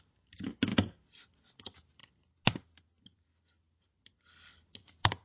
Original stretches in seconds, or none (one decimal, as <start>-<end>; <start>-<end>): 0.0-5.2

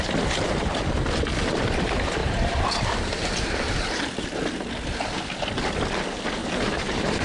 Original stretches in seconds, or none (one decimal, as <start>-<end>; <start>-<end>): 0.0-2.2; 4.2-6.4

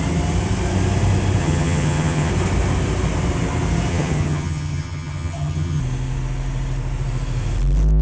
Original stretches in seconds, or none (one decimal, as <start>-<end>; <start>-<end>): 0.0-1.4; 2.3-3.9; 5.8-8.0

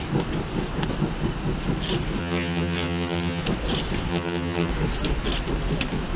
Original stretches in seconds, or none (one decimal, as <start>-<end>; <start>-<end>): 0.0-2.2; 3.4-4.1; 4.7-6.2